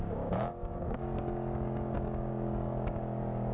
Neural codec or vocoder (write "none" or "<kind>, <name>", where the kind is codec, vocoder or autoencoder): codec, DAC